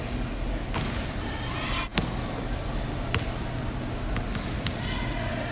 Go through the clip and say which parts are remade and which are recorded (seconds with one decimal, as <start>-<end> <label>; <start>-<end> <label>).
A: 0.0-5.5 recorded